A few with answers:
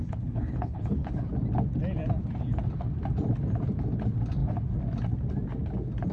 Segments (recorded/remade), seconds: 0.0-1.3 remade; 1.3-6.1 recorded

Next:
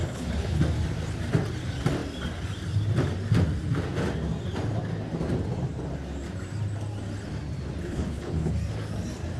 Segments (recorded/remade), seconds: 0.0-0.6 remade; 0.6-7.8 recorded; 7.8-8.5 remade; 8.5-9.4 recorded

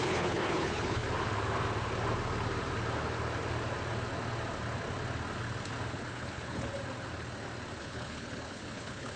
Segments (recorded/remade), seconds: 0.0-1.0 remade; 1.0-5.9 recorded; 5.9-6.7 remade; 6.7-7.8 recorded; 7.8-9.2 remade

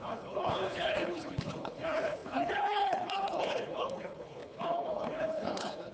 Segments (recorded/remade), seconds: 0.0-5.9 remade

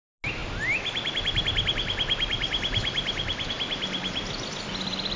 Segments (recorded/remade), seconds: 0.0-5.2 recorded

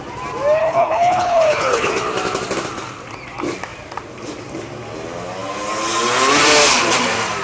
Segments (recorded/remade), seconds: 0.0-0.6 recorded; 0.6-1.9 remade; 1.9-7.4 recorded